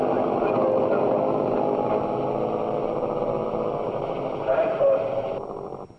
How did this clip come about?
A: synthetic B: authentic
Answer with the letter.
B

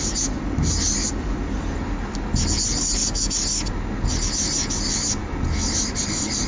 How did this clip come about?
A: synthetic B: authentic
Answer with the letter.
B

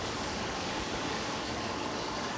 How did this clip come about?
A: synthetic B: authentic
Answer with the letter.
A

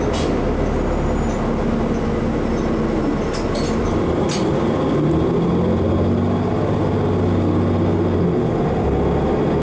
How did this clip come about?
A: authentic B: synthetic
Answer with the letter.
A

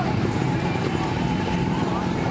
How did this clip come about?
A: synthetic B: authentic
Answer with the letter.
A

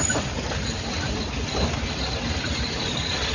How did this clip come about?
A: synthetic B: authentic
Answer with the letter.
B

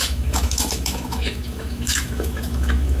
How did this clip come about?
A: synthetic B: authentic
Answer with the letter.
A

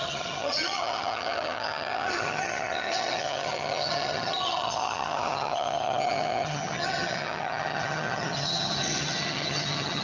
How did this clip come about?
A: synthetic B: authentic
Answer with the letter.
A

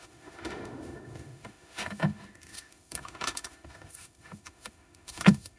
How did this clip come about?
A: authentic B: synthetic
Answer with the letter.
B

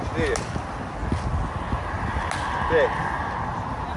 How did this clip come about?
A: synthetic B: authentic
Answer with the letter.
B